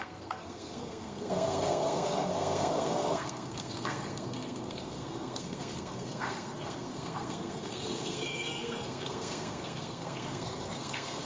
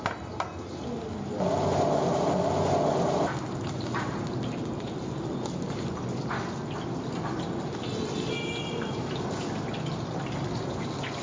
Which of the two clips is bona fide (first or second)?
second